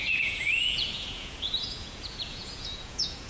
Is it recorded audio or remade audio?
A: remade